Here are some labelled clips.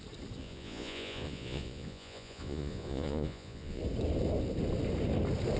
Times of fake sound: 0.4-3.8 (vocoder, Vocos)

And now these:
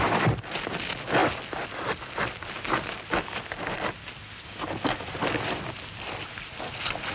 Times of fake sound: none

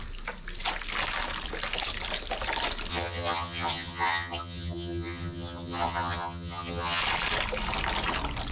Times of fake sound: 2.9-7.0 (vocoder, HiFi-GAN)

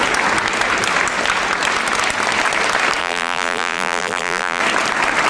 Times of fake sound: 3.0-4.6 (vocoder, BigVGAN v2)

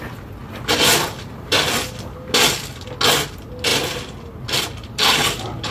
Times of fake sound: 3.7-5.7 (vocoder, BigVGAN v2)

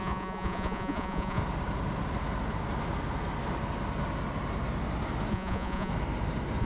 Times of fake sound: 0.0-1.4 (vocoder, Vocos); 5.3-5.9

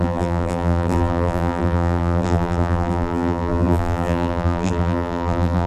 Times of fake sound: 0.0-5.7 (vocoder, BigVGAN v2)

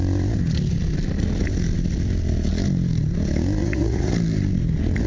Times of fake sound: 3.6-4.1 (vocoder, Vocos)